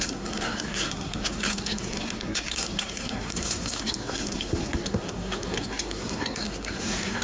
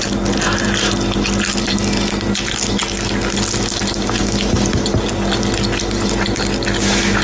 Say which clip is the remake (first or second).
first